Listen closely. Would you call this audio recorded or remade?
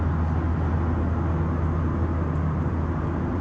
recorded